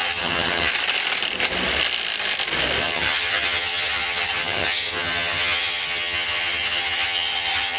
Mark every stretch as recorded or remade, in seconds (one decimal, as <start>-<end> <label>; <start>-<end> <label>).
0.0-0.7 remade; 0.7-2.8 recorded; 2.8-7.8 remade